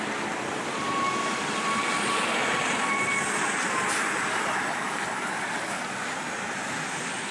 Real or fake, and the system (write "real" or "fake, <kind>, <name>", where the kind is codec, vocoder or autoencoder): real